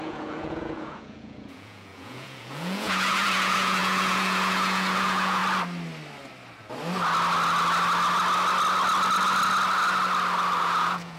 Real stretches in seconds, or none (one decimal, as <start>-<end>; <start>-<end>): 5.4-10.6